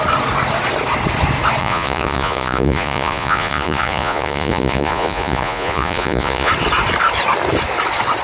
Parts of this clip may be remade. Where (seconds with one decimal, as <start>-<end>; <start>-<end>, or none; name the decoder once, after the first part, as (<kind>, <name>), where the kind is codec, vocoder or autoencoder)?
1.6-6.5 (vocoder, Vocos)